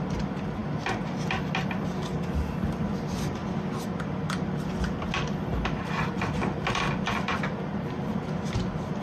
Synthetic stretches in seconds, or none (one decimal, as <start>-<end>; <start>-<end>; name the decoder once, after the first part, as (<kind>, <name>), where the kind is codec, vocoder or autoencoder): none